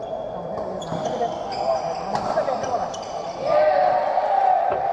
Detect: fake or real real